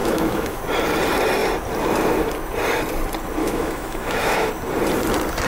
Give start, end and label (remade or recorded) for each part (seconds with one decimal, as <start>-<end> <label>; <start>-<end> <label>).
0.0-0.6 remade; 0.6-3.4 recorded; 3.4-4.5 remade; 4.5-5.5 recorded